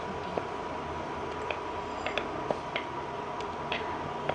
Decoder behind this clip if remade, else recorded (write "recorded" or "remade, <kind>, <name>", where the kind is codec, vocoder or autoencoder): recorded